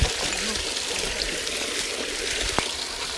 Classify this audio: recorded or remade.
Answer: recorded